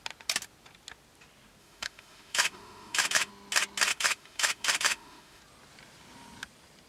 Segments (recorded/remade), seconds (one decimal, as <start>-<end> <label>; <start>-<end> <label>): 0.0-1.6 recorded; 1.6-3.3 remade; 3.3-3.9 recorded; 3.9-5.4 remade; 5.4-6.9 recorded